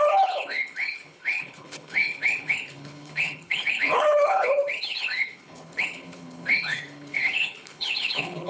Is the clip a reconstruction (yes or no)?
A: yes